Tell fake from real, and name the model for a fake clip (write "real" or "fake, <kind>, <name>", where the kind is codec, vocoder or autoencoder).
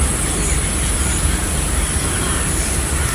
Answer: fake, vocoder, BigVGAN v2